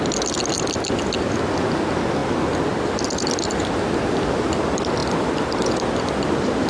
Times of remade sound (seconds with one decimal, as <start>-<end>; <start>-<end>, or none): none